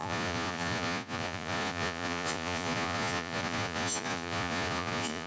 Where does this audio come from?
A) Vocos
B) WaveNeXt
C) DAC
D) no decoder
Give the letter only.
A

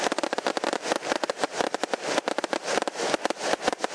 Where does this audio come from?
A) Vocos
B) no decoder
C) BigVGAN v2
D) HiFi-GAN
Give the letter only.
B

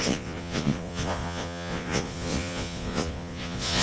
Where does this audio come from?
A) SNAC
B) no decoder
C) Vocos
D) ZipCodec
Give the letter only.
C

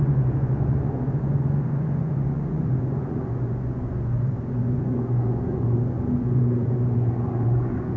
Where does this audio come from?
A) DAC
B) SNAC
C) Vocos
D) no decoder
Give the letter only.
C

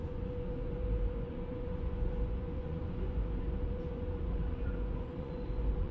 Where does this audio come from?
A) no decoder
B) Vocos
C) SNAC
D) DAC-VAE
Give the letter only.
B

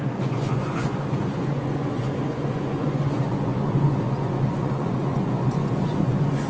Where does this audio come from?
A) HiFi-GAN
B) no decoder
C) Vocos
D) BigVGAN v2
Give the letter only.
C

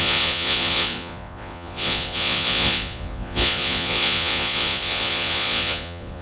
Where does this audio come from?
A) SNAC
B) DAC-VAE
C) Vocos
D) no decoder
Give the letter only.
C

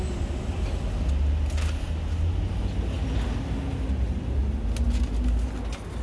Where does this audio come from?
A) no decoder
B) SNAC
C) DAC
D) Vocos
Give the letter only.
A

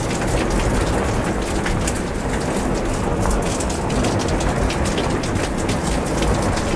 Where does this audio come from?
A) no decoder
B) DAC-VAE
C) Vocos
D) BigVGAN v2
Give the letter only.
A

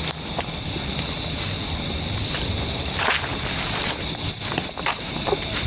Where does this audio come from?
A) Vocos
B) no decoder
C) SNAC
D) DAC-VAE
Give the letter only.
B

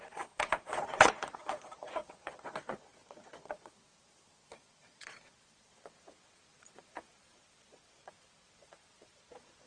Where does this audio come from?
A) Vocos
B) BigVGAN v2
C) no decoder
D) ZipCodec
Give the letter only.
A